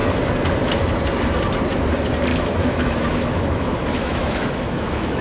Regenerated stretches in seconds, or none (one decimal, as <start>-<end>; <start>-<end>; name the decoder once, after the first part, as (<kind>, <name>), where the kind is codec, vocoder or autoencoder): 2.3-5.2 (autoencoder, DAC-VAE)